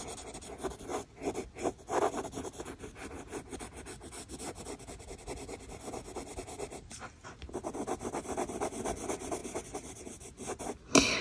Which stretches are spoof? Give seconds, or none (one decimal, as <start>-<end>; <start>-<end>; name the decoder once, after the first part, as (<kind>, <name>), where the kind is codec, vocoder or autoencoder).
none